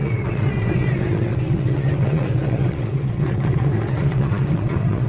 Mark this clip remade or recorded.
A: remade